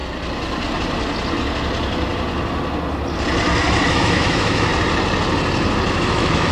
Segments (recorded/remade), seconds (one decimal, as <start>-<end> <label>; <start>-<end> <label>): 0.0-3.9 recorded; 3.9-4.7 remade; 4.7-6.0 recorded; 6.0-6.5 remade